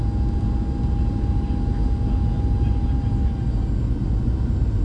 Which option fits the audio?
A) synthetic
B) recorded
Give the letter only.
B